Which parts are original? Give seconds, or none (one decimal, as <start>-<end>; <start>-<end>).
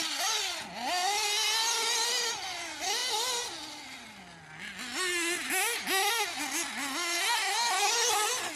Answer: 0.0-8.6